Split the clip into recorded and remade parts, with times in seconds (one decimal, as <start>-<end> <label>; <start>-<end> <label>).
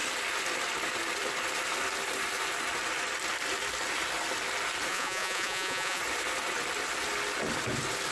0.0-4.9 recorded; 4.9-6.0 remade; 6.0-8.1 recorded